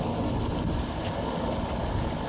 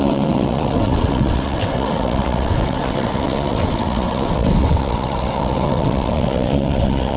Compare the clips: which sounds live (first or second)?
first